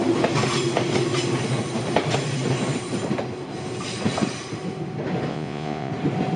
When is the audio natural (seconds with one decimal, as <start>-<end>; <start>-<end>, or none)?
0.0-5.3; 5.9-6.4